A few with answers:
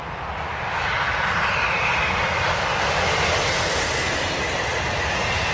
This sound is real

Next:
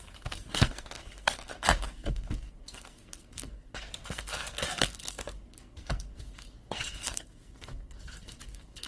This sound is fake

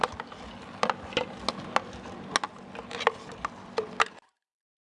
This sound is real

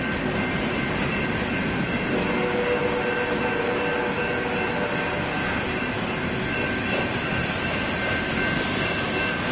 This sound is real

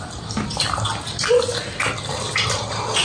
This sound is real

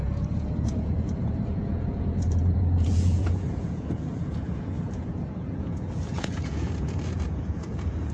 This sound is fake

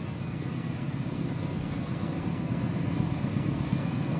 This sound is fake